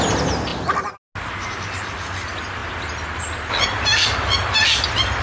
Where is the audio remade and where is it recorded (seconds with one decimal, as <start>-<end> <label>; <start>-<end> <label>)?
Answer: 0.0-5.2 recorded